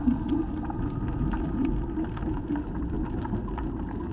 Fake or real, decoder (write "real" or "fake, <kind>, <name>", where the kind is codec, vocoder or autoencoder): real